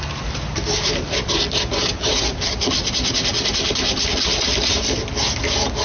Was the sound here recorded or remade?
recorded